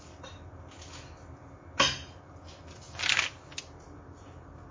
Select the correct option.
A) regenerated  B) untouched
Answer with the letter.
B